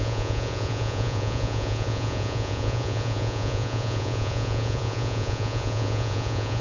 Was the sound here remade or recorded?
remade